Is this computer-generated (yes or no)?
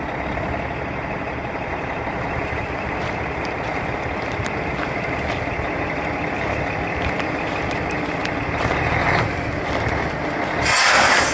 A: no